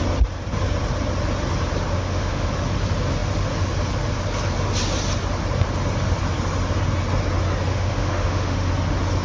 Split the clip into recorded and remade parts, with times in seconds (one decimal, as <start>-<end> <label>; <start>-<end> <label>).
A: 0.0-1.9 recorded; 1.9-2.5 remade; 2.5-7.7 recorded; 7.7-8.7 remade; 8.7-9.2 recorded